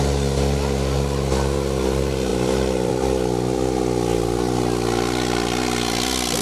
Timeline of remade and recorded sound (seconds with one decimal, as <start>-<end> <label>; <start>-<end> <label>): 0.0-6.4 recorded